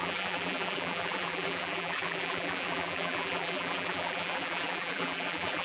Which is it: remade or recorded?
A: remade